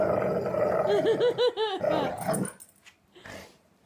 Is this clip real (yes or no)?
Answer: yes